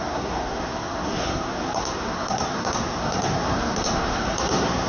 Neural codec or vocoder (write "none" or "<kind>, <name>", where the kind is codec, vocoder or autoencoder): codec, SNAC